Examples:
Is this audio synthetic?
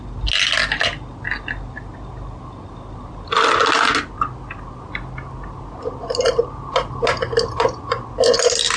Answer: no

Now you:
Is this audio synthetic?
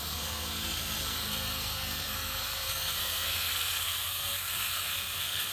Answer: yes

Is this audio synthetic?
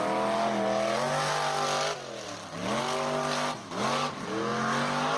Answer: no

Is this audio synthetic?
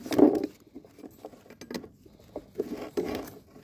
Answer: no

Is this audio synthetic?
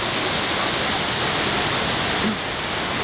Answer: no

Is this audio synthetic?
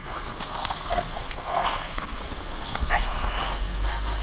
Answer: yes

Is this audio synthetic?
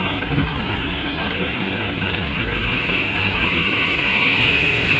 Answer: yes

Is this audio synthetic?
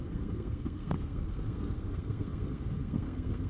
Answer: yes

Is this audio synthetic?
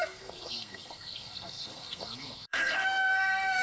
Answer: yes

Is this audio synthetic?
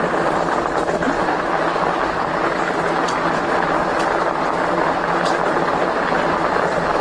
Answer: no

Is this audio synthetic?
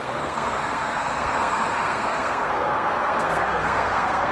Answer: yes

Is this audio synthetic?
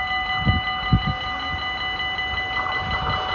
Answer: no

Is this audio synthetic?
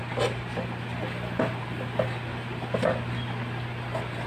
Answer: no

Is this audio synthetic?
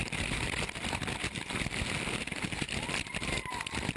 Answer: no